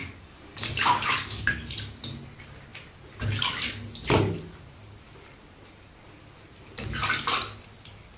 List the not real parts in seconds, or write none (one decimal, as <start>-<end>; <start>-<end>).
0.0-1.5